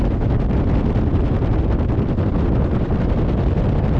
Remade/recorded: recorded